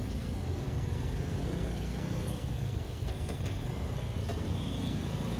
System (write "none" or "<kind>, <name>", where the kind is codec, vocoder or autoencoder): codec, SNAC